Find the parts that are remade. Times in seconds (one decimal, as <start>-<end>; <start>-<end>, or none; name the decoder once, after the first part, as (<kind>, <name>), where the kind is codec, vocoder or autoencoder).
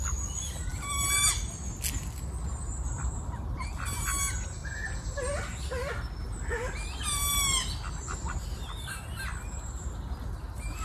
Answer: none